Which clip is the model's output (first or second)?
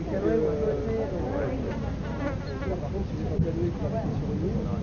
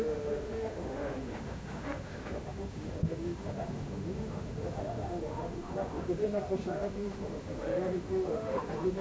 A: second